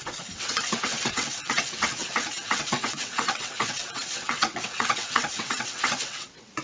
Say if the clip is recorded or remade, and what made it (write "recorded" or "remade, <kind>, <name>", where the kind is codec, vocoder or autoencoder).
remade, vocoder, WaveNeXt